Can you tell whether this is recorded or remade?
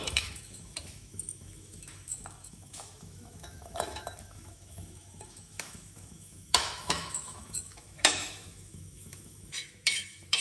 remade